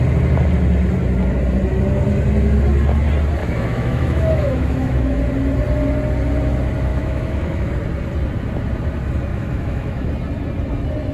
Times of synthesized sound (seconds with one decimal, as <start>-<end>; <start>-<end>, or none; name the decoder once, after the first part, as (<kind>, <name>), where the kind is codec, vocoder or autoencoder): 3.4-5.2 (autoencoder, DAC-VAE); 6.9-7.7; 9.3-10.1